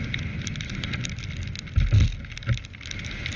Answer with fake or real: real